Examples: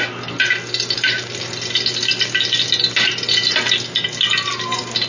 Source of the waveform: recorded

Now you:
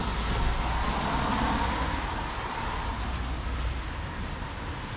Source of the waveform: recorded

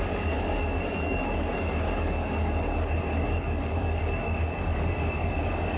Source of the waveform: remade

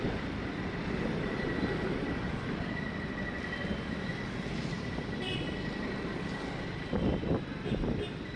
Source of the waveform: remade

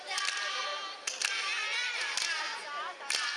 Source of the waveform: recorded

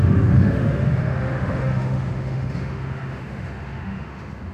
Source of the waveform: remade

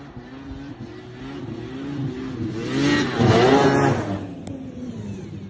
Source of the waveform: recorded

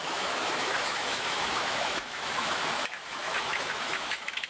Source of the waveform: remade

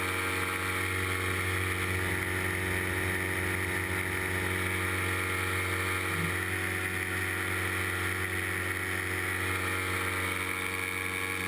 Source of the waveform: recorded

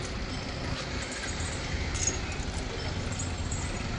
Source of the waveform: recorded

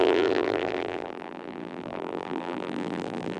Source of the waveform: remade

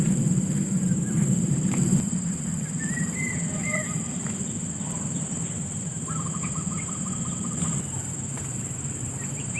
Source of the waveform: remade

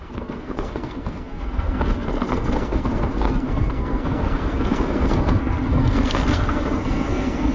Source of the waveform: remade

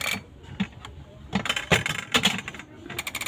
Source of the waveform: recorded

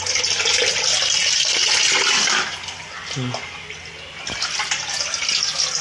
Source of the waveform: recorded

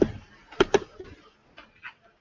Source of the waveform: recorded